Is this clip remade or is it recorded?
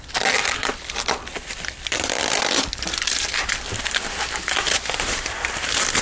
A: remade